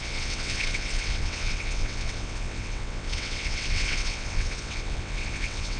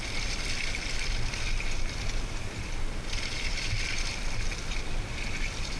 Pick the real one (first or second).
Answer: second